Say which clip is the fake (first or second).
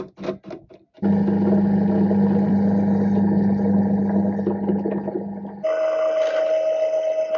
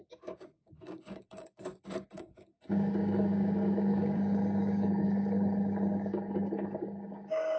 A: second